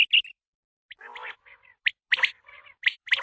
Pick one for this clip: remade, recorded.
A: recorded